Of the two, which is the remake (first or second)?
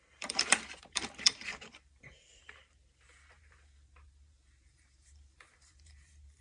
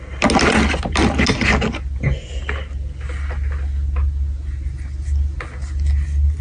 first